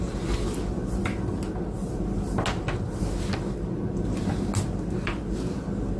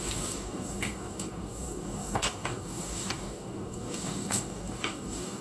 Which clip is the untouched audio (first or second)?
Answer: first